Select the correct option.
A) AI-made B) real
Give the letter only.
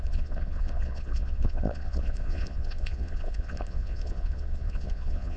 A